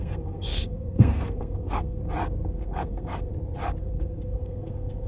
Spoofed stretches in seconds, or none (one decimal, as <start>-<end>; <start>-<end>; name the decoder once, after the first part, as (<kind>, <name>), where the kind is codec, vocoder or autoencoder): 0.0-2.0 (codec, SNAC); 2.5-3.3; 3.8-5.1